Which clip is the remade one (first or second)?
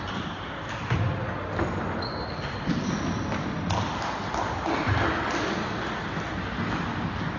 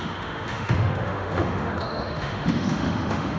second